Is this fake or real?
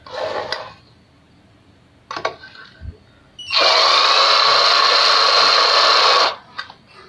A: real